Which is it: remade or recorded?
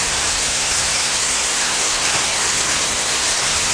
remade